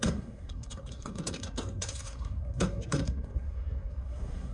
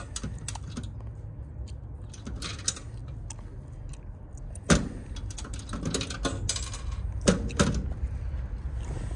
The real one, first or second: second